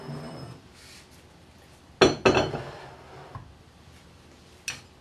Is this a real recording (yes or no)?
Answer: yes